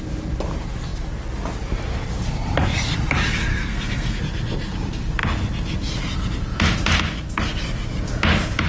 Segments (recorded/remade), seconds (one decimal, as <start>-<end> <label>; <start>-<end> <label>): 0.0-3.5 recorded; 3.5-4.2 remade; 4.2-8.7 recorded